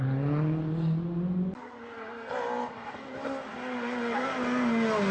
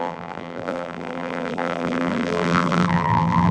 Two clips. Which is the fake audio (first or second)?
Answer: second